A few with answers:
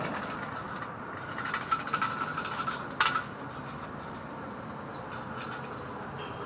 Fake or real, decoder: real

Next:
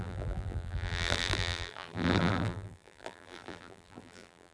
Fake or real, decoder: fake, vocoder, BigVGAN v2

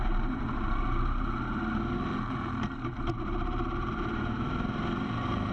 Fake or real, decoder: fake, vocoder, BigVGAN v2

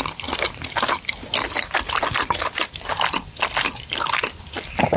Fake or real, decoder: fake, vocoder, BigVGAN v2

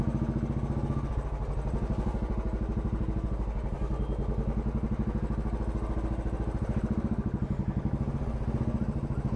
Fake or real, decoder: real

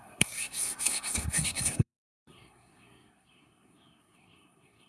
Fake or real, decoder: fake, codec, SNAC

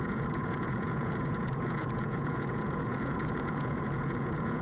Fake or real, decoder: fake, vocoder, Vocos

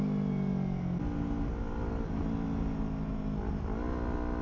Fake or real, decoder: real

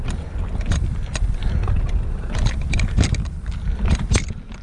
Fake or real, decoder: real